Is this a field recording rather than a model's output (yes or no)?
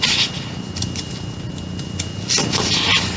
yes